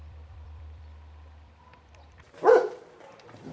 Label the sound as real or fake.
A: fake